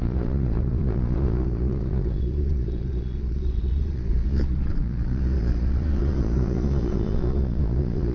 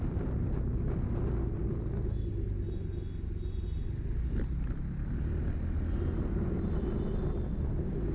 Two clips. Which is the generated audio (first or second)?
first